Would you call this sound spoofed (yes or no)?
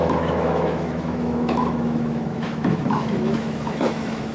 yes